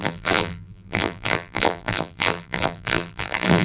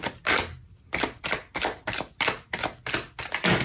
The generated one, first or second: first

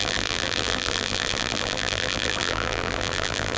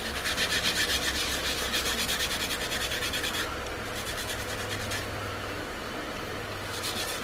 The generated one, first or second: first